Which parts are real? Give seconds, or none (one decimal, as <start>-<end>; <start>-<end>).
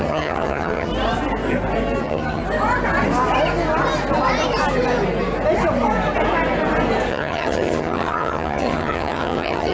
0.9-2.0; 2.4-7.1